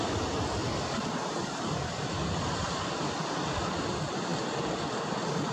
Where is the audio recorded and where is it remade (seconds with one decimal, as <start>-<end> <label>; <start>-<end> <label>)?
0.0-0.6 recorded; 0.6-3.9 remade; 3.9-4.3 recorded; 4.3-4.8 remade; 4.8-5.5 recorded